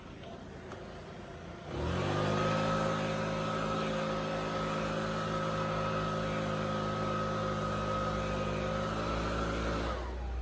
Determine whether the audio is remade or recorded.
recorded